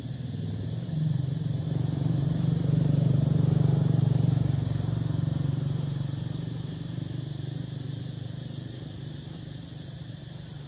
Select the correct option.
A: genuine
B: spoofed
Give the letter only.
B